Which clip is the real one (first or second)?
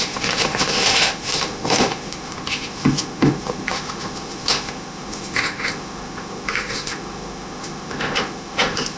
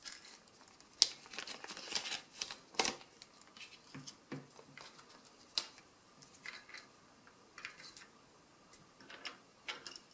second